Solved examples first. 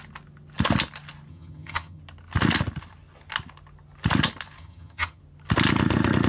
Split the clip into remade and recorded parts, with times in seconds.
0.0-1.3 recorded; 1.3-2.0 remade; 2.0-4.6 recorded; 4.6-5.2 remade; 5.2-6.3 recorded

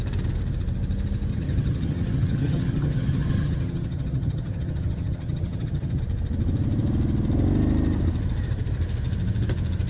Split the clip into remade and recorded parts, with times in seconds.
0.0-1.3 recorded; 1.3-6.0 remade; 6.0-9.9 recorded

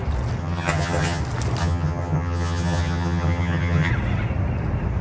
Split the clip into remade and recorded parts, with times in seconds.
0.0-0.4 recorded; 0.4-1.2 remade; 1.2-1.6 recorded; 1.6-3.9 remade; 3.9-5.0 recorded

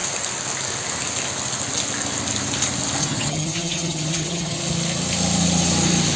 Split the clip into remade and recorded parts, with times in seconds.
0.0-3.0 recorded; 3.0-4.6 remade; 4.6-6.2 recorded